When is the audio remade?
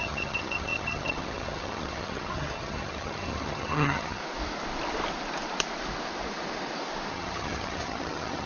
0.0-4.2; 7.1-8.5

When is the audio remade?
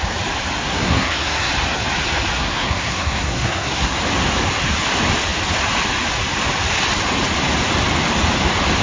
0.6-1.5; 2.4-4.0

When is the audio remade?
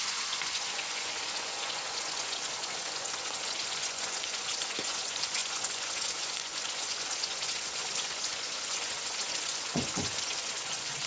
0.0-11.1